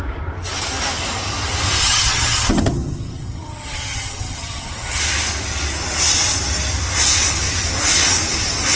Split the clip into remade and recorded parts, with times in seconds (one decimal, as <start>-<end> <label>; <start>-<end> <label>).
0.0-1.8 recorded; 1.8-5.0 remade; 5.0-8.8 recorded